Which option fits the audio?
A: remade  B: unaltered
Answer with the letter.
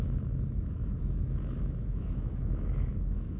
A